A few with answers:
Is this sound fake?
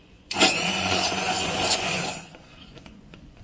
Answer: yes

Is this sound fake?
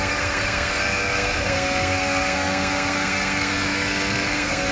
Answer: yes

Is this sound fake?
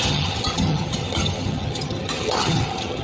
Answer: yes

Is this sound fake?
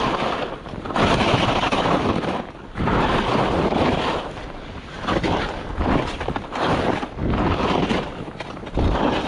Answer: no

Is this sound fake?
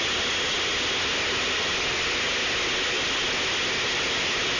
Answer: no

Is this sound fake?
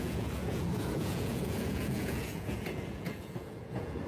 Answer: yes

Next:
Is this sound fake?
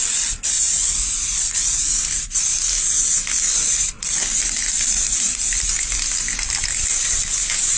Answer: no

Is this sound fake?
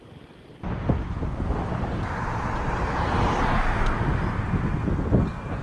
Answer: no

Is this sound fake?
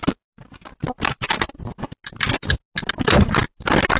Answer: no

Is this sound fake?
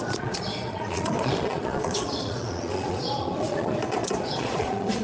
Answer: yes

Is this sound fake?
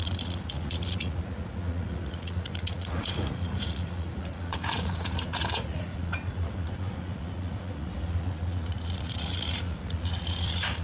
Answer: yes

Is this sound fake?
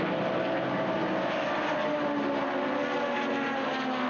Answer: no